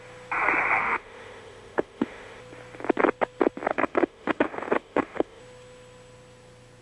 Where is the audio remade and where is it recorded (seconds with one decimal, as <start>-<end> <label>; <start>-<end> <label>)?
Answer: 0.0-0.8 recorded; 0.8-2.4 remade; 2.4-3.7 recorded; 3.7-5.4 remade; 5.4-6.8 recorded